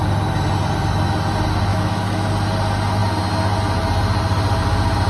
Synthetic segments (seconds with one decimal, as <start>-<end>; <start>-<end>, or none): 1.7-2.3